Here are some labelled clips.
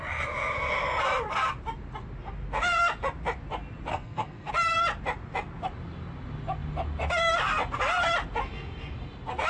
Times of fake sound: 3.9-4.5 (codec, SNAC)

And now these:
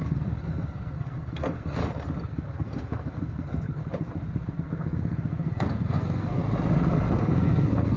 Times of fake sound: 0.0-1.8 (codec, SNAC); 2.3-3.8; 4.5-6.4; 7.2-8.0

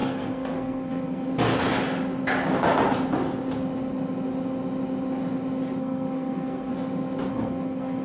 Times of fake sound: 0.0-1.3 (codec, SNAC); 5.8-6.7; 7.3-8.0

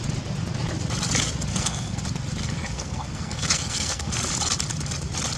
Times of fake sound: 1.5-2.0 (codec, SNAC); 2.4-4.1

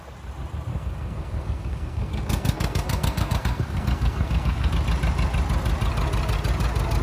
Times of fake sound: 0.7-4.7 (codec, SNAC)

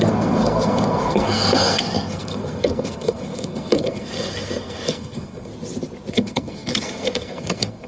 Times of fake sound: 0.0-5.5 (codec, SNAC); 6.1-7.9

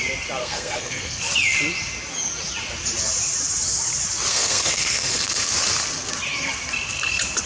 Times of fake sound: 0.4-1.2 (codec, SNAC); 4.3-5.5

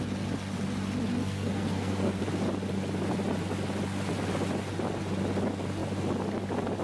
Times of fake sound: 1.1-2.2 (codec, SNAC)